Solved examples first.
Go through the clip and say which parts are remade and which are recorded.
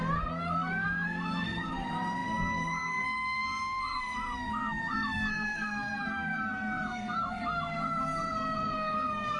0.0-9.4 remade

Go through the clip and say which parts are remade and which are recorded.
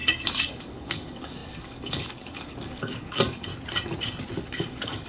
0.0-3.5 remade; 3.5-4.4 recorded; 4.4-5.1 remade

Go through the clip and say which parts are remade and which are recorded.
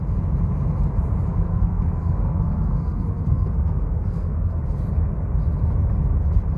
0.0-1.3 recorded; 1.3-4.6 remade; 4.6-6.6 recorded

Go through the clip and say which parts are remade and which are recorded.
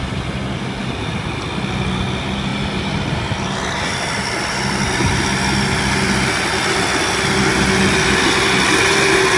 0.0-9.4 recorded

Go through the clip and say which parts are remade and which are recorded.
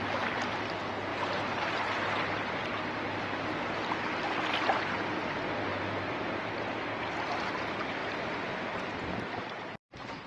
0.0-1.1 recorded; 1.1-1.7 remade; 1.7-5.7 recorded; 5.7-6.5 remade; 6.5-8.0 recorded; 8.0-10.3 remade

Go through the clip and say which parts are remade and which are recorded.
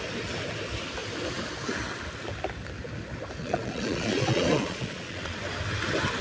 0.0-3.4 recorded; 3.4-5.4 remade; 5.4-6.2 recorded